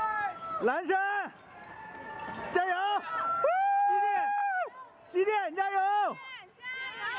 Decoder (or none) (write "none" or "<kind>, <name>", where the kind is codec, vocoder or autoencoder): none